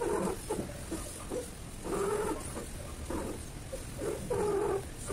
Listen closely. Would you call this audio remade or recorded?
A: recorded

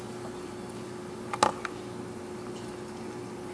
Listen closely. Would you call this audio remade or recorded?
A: recorded